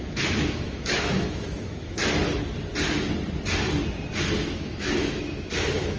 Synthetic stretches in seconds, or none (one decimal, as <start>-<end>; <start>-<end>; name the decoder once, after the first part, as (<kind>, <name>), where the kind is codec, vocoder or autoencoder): 0.0-2.0 (autoencoder, DAC-VAE); 4.5-6.0